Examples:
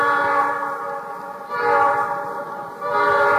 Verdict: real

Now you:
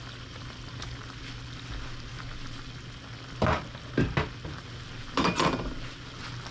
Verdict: real